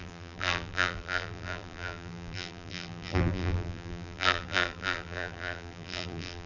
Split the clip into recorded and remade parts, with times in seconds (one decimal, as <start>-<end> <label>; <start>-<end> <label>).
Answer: 0.0-6.5 remade